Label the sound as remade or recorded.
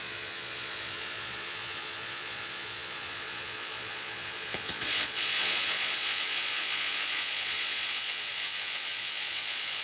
remade